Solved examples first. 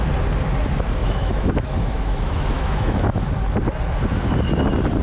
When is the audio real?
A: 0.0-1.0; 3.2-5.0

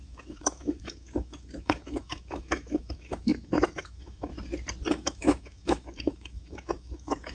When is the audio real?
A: 4.3-4.9

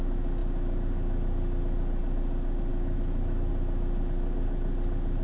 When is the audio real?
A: 0.0-2.7; 3.5-5.2

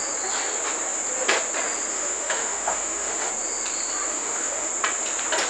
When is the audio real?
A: 0.0-1.9; 3.3-4.1; 4.7-5.5

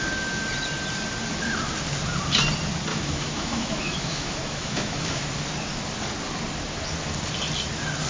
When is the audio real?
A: 0.0-2.9; 5.2-8.1